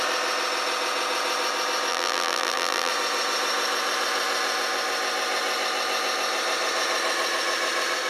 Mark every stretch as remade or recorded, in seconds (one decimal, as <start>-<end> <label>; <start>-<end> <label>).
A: 0.0-1.9 recorded; 1.9-2.9 remade; 2.9-8.1 recorded